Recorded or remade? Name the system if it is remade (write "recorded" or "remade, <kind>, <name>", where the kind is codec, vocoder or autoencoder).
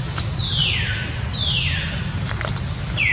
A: recorded